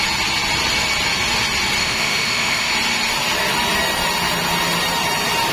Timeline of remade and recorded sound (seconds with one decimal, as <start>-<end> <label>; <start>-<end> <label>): 0.0-1.8 recorded; 1.8-2.7 remade; 2.7-5.5 recorded